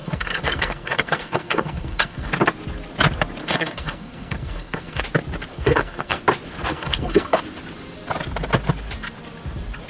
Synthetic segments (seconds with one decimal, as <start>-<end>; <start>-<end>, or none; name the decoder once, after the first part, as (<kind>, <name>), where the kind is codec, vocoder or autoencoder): 0.0-2.3 (codec, SNAC); 3.4-5.0; 5.5-6.2; 6.7-7.4